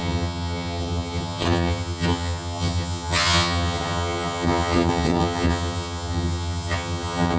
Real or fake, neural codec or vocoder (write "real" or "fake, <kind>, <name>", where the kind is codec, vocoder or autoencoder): fake, vocoder, HiFi-GAN